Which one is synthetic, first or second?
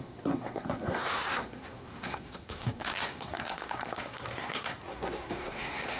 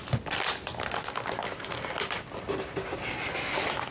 first